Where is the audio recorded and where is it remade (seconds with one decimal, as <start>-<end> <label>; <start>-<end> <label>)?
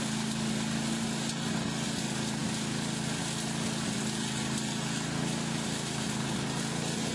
0.0-7.1 recorded